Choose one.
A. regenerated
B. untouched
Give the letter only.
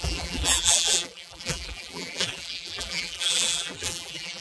A